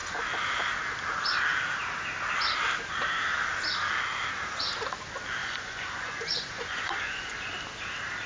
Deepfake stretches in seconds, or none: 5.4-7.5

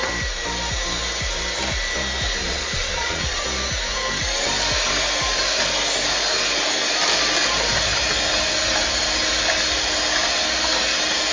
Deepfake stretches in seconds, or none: 2.4-3.4

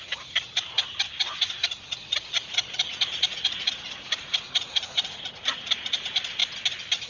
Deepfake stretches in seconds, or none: 0.0-6.4

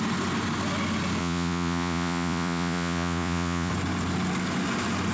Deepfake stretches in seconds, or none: 1.2-3.7

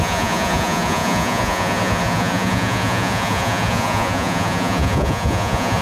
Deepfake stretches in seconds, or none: 0.0-5.8

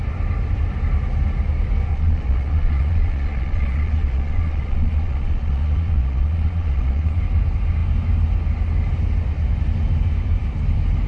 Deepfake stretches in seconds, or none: 1.9-7.2

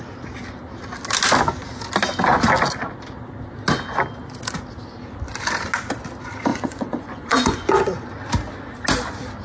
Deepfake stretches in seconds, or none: 6.5-8.1

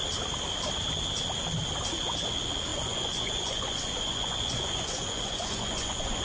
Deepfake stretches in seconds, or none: 2.7-6.2